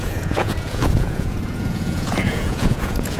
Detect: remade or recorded remade